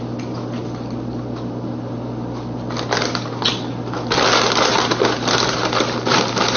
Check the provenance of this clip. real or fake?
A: real